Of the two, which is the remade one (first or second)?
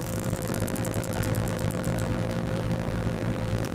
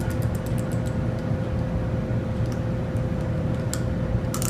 first